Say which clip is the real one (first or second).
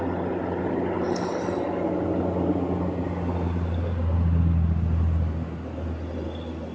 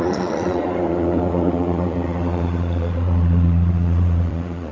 first